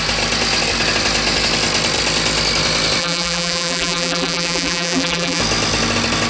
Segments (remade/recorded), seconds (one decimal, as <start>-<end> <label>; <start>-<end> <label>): 0.0-3.0 recorded; 3.0-5.4 remade; 5.4-6.3 recorded